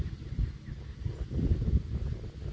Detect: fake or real real